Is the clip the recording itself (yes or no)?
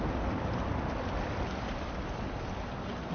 yes